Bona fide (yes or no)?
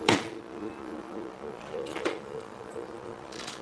no